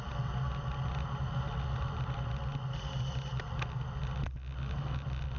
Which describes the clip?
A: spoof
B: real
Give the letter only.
B